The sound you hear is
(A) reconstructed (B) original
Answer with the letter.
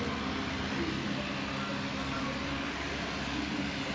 B